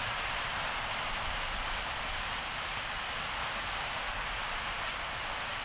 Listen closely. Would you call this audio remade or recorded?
recorded